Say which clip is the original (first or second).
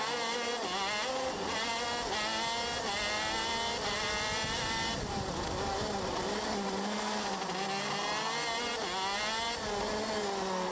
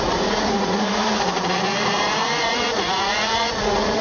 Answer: first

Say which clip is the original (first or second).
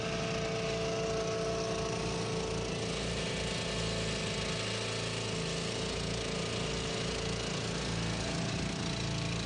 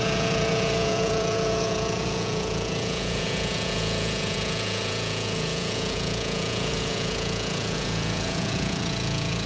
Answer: first